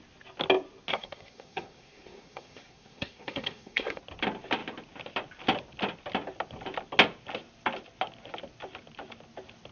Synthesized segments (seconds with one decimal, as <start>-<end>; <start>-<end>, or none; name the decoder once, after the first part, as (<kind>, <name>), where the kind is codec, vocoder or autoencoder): 0.9-4.0 (codec, SNAC)